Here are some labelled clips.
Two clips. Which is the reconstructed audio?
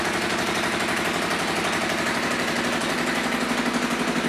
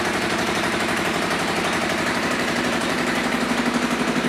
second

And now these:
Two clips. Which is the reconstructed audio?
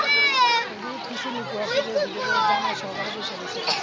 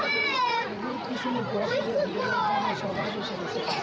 second